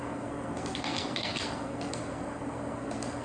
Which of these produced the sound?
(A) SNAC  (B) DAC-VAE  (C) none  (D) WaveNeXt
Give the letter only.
A